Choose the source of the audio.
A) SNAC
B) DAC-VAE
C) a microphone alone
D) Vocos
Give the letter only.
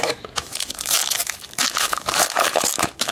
B